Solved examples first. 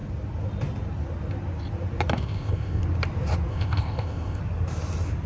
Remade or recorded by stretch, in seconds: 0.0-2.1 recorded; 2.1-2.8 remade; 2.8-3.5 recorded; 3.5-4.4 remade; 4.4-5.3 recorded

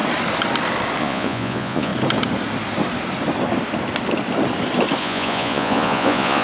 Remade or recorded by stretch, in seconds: 0.0-1.0 recorded; 1.0-1.9 remade; 1.9-5.0 recorded; 5.0-6.4 remade

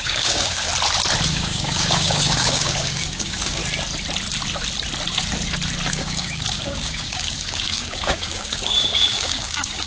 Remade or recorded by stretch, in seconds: 0.0-0.7 remade; 0.7-1.3 recorded; 1.3-3.6 remade; 3.6-5.9 recorded; 5.9-9.9 remade